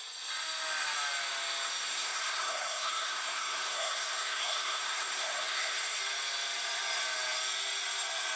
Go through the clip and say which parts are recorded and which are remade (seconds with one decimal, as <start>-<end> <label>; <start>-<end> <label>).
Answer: 0.0-1.9 recorded; 1.9-6.0 remade; 6.0-8.4 recorded